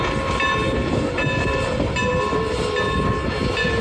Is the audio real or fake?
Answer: real